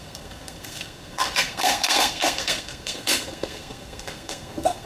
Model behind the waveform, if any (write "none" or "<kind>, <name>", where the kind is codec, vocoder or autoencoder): codec, SNAC